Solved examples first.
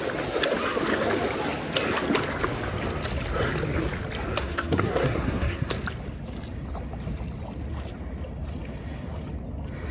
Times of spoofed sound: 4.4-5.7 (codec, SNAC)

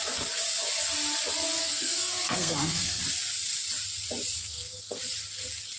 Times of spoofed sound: 1.6-3.0 (codec, SNAC); 4.4-5.0

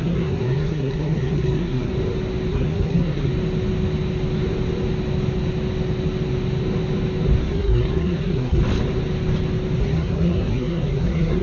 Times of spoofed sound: 0.0-1.9 (codec, SNAC); 2.5-3.3; 7.4-8.6; 9.8-11.4

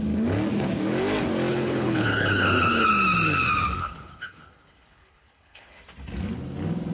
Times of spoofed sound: 1.5-2.9 (codec, HILCodec); 3.8-5.8

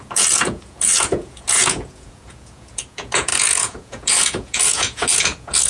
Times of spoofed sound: 0.0-5.7 (vocoder, Vocos)

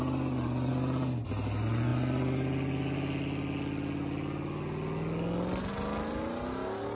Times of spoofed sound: none